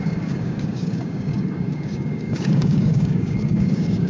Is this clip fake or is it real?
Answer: fake